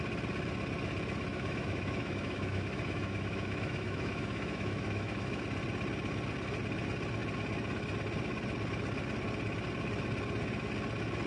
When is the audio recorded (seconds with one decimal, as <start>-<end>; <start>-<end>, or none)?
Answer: 0.0-1.3; 5.4-11.3